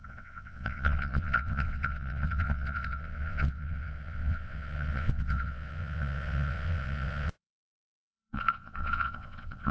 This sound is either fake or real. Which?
fake